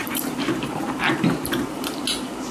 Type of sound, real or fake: fake